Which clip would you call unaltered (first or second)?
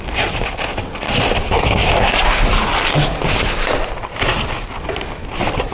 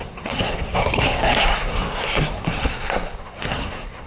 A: first